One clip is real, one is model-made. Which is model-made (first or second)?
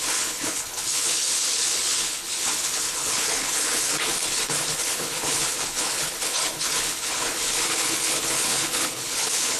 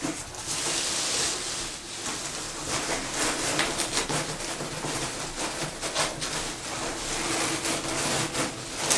first